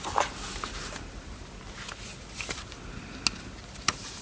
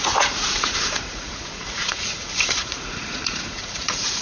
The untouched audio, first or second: first